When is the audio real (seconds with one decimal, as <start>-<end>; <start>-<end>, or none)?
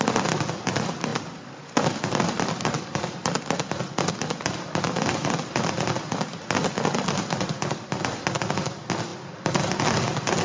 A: 0.0-10.4